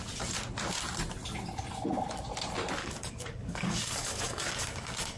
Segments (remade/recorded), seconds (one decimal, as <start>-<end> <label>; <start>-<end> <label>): 0.0-2.8 recorded; 2.8-5.2 remade